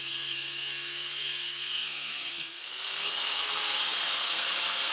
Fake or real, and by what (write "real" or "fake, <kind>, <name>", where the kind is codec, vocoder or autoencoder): fake, codec, SNAC